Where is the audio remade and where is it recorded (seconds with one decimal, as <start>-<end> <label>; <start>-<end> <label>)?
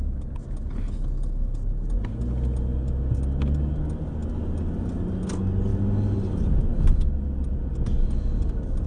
0.0-8.9 recorded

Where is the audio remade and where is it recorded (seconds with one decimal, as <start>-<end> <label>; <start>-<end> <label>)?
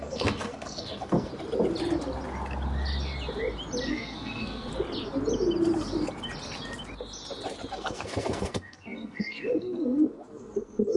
0.0-1.3 remade; 1.3-3.9 recorded; 3.9-4.7 remade; 4.7-7.7 recorded; 7.7-11.0 remade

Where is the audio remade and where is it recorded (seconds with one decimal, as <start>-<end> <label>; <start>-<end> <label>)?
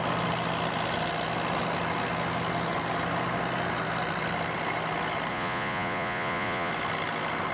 0.0-5.3 recorded; 5.3-6.7 remade; 6.7-7.5 recorded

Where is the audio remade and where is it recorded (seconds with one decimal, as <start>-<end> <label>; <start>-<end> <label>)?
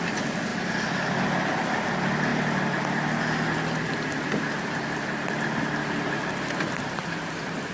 0.0-7.7 recorded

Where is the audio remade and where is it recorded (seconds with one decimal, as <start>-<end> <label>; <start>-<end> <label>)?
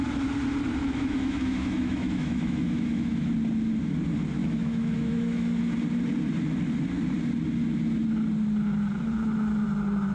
0.0-0.8 recorded; 0.8-3.3 remade; 3.3-4.4 recorded; 4.4-5.6 remade; 5.6-10.1 recorded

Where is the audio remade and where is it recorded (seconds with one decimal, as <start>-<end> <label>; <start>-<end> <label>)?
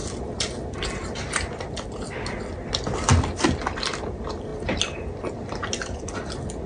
0.0-4.0 remade; 4.0-4.5 recorded; 4.5-6.1 remade; 6.1-6.7 recorded